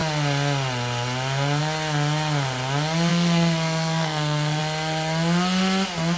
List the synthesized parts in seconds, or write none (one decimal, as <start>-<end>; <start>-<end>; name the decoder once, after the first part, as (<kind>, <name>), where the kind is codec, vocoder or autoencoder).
3.1-4.6 (codec, SNAC)